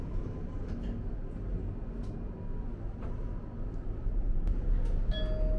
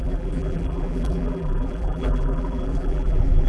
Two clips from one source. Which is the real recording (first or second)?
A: first